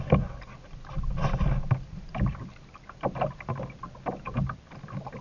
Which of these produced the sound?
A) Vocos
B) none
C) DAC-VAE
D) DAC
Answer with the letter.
B